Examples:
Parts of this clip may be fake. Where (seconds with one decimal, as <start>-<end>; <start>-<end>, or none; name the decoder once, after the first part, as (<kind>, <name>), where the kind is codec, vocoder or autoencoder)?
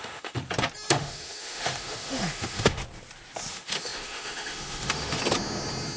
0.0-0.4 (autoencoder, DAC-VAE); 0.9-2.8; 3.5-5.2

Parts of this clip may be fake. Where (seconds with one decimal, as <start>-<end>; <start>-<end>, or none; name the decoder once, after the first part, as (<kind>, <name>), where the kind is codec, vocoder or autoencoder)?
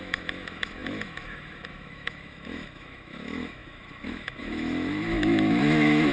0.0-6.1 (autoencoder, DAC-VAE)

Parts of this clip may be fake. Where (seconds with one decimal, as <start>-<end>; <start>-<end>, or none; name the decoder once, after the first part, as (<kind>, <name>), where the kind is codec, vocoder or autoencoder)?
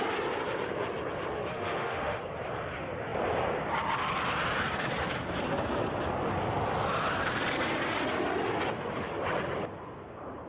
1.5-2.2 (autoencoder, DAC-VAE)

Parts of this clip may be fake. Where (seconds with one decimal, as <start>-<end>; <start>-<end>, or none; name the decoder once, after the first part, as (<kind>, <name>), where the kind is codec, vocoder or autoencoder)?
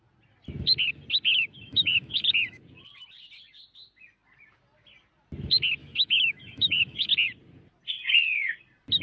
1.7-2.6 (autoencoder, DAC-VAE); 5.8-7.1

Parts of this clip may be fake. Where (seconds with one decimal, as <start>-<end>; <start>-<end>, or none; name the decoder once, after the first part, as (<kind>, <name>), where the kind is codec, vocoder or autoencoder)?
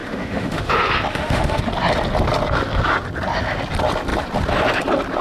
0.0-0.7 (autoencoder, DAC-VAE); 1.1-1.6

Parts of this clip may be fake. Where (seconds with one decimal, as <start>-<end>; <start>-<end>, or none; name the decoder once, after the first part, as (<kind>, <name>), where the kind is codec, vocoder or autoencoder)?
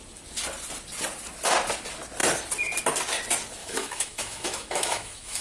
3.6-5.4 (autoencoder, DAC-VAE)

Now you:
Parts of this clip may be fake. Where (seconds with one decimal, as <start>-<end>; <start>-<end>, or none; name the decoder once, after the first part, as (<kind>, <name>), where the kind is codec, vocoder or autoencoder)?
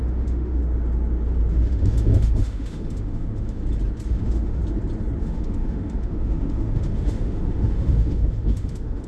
0.0-0.6 (autoencoder, DAC-VAE); 1.5-3.6; 4.1-4.6; 5.2-9.1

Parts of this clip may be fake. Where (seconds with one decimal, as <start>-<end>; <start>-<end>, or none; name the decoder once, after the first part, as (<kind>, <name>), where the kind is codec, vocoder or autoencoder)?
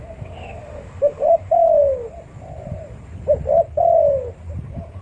0.0-1.8 (autoencoder, DAC-VAE)